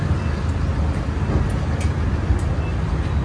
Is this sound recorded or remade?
recorded